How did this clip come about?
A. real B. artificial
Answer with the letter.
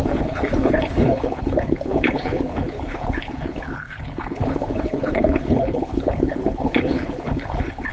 B